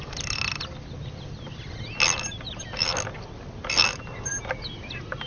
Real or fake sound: real